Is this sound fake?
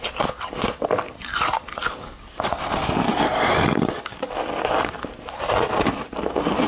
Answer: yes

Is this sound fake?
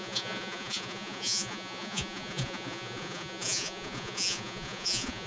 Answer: yes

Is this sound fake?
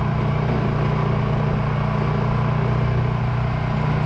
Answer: no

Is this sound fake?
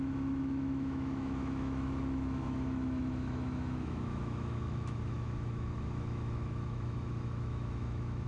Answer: yes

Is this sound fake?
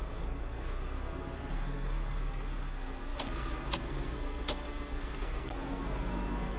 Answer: yes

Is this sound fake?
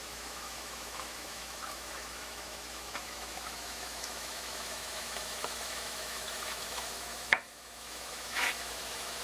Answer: yes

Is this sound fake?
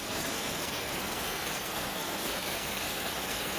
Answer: yes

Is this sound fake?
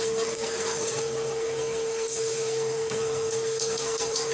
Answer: yes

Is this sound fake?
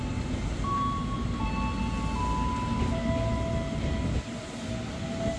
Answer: no